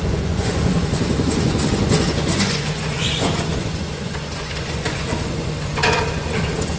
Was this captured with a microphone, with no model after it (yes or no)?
no